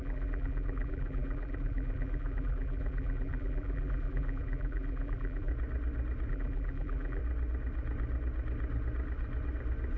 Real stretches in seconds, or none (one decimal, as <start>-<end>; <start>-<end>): 5.5-6.3; 7.2-10.0